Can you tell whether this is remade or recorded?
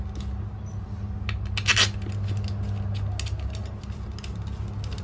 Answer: recorded